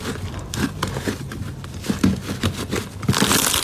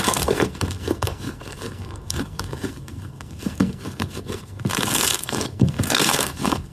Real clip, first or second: first